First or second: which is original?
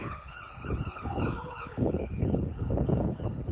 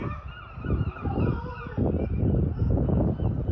second